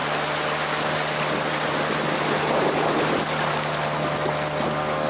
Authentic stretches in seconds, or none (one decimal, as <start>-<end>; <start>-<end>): 0.0-5.1